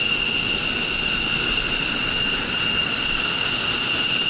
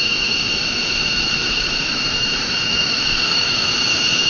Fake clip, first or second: second